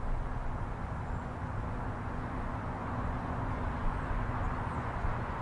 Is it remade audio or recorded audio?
remade